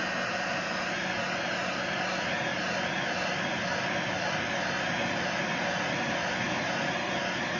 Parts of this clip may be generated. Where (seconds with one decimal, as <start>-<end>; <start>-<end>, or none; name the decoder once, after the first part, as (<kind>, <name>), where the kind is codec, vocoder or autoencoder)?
none

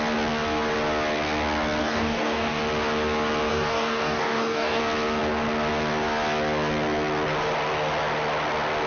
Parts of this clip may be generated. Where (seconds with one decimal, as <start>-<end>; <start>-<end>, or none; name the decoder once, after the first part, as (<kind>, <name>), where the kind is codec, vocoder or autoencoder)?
1.8-2.6 (codec, DAC); 3.5-4.8

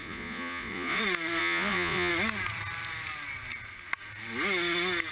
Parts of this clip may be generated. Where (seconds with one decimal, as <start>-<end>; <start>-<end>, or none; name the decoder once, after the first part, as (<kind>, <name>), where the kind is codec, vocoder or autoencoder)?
0.0-1.0 (vocoder, Vocos); 1.4-2.1